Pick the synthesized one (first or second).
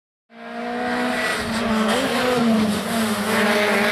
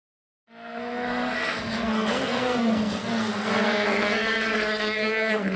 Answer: second